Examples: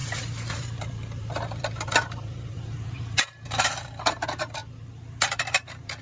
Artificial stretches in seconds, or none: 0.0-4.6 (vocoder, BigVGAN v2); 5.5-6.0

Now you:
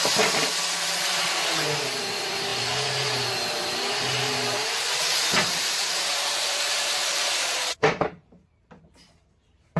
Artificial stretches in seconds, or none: 0.0-9.8 (vocoder, BigVGAN v2)

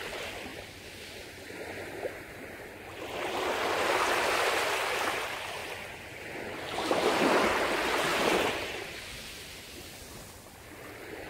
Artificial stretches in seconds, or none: 0.5-5.0 (vocoder, BigVGAN v2); 8.1-9.1

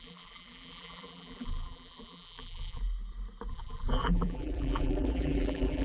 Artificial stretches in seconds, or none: 0.0-2.8 (vocoder, BigVGAN v2); 3.5-5.8